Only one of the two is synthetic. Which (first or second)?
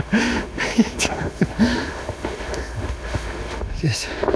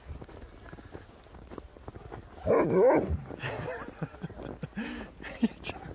first